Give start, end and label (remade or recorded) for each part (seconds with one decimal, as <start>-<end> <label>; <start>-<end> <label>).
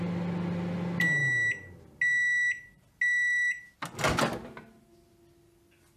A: 0.0-6.0 recorded